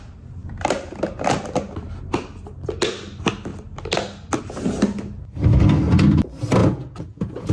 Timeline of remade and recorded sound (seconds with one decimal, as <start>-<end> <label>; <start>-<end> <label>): 0.0-6.6 recorded; 6.6-7.5 remade